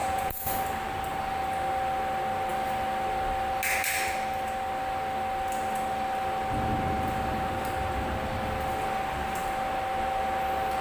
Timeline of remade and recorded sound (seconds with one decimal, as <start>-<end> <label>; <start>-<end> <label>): 0.0-0.6 remade; 0.6-10.8 recorded

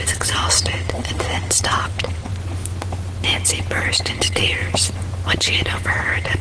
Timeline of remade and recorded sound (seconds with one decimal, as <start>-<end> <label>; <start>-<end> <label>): 0.0-2.3 remade; 2.3-4.1 recorded; 4.1-4.6 remade; 4.6-5.9 recorded; 5.9-6.4 remade

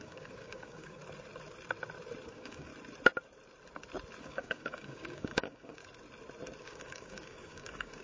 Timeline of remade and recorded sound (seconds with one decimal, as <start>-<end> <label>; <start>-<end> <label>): 0.0-1.0 remade; 1.0-2.3 recorded; 2.3-2.7 remade; 2.7-4.2 recorded; 4.2-5.8 remade; 5.8-6.6 recorded; 6.6-8.0 remade

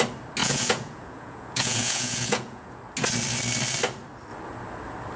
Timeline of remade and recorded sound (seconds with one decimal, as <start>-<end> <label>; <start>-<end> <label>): 0.0-0.4 recorded; 0.4-2.8 remade; 2.8-5.2 recorded

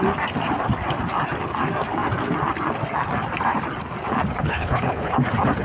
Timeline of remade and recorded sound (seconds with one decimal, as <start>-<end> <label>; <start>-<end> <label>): 0.0-4.4 recorded; 4.4-5.1 remade; 5.1-5.6 recorded

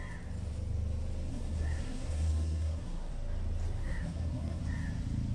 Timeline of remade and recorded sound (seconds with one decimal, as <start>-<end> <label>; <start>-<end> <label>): 0.0-1.3 recorded; 1.3-3.1 remade; 3.1-3.8 recorded; 3.8-4.6 remade; 4.6-5.3 recorded

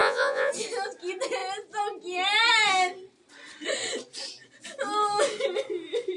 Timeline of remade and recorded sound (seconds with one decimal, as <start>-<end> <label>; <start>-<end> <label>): 0.0-0.5 remade; 0.5-6.2 recorded